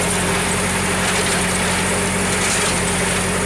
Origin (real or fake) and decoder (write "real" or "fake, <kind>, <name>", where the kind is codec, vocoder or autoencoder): real